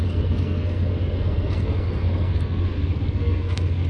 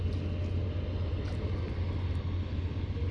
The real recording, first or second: second